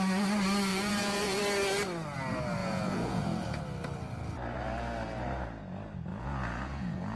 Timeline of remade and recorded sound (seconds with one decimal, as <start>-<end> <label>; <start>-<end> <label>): 0.0-0.7 recorded; 0.7-1.4 remade; 1.4-2.6 recorded; 2.6-3.6 remade; 3.6-6.1 recorded; 6.1-7.2 remade